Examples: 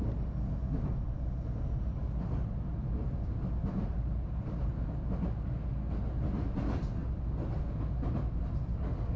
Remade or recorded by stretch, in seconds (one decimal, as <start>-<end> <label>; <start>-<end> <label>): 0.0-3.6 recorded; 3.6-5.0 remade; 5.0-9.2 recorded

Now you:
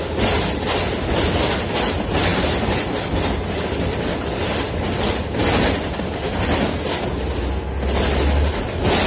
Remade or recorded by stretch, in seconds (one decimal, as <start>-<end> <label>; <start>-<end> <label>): 0.0-2.3 recorded; 2.3-5.4 remade; 5.4-9.1 recorded

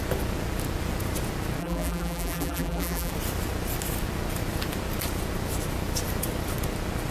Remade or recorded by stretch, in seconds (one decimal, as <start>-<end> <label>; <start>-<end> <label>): 0.0-1.6 recorded; 1.6-3.1 remade; 3.1-7.1 recorded

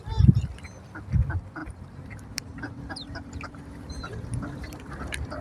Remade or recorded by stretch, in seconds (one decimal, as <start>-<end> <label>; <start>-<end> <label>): 0.0-1.6 recorded; 1.6-4.8 remade; 4.8-5.4 recorded

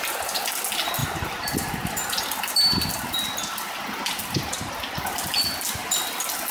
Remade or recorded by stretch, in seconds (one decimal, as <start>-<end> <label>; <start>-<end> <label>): 0.0-6.5 recorded

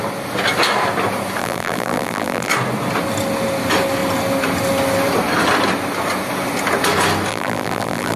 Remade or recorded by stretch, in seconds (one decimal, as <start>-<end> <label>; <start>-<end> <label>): 0.0-1.4 recorded; 1.4-2.5 remade; 2.5-7.3 recorded; 7.3-8.2 remade

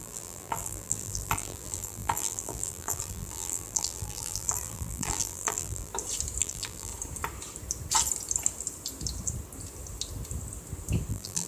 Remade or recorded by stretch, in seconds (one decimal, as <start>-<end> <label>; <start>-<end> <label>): 0.0-5.9 remade; 5.9-6.4 recorded; 6.4-6.9 remade; 6.9-11.1 recorded; 11.1-11.5 remade